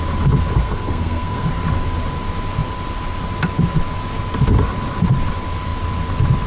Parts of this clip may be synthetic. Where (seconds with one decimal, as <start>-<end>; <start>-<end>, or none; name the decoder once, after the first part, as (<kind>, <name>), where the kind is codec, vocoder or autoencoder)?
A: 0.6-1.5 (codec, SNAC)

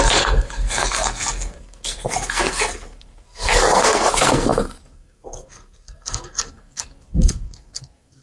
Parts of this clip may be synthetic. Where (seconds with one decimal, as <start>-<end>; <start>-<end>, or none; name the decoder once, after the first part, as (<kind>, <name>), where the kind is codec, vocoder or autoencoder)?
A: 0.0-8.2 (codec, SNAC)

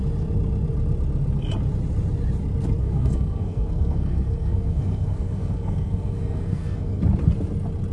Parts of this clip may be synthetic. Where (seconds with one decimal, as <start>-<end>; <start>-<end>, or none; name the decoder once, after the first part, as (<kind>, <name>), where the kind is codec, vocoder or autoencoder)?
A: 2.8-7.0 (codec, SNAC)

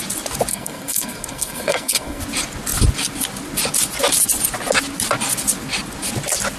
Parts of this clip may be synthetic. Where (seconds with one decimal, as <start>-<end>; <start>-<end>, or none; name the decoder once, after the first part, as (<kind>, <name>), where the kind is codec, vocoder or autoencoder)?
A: 0.5-2.2 (codec, SNAC)

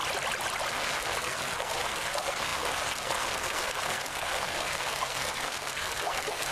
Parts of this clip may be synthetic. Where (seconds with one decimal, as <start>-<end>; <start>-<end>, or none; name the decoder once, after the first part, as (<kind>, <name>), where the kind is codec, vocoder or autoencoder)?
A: 0.7-6.5 (codec, SNAC)

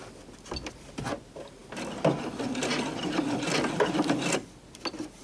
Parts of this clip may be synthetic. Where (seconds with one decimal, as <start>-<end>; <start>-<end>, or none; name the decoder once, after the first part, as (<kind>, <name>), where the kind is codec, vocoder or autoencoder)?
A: none